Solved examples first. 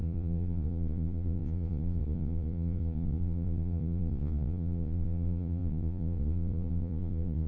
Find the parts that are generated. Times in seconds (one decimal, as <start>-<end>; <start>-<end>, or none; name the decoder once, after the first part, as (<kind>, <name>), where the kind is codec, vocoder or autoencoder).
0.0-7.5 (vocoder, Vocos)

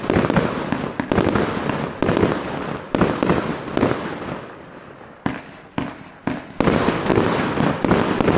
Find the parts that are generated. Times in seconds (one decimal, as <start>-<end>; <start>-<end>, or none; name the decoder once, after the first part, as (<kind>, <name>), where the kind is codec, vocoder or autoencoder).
2.0-6.1 (vocoder, BigVGAN v2); 7.1-8.0

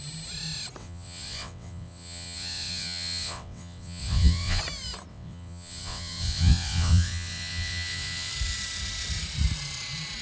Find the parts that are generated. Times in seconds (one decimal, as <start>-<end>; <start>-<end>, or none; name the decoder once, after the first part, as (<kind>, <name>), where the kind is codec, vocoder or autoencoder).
0.8-4.6 (vocoder, WaveNeXt); 5.1-8.3